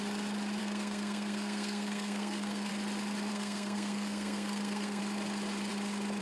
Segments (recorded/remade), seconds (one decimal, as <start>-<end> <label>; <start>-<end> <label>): 0.0-0.6 recorded; 0.6-2.7 remade; 2.7-3.3 recorded; 3.3-5.0 remade; 5.0-6.2 recorded